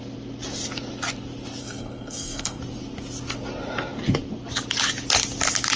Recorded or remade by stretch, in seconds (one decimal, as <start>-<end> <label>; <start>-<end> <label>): 0.0-1.6 recorded; 1.6-2.6 remade; 2.6-5.8 recorded